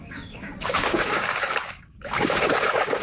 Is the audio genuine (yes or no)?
no